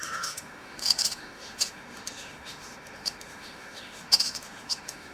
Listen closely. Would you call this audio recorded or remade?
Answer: remade